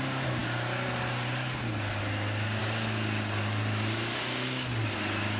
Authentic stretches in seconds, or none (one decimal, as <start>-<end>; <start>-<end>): 0.0-5.4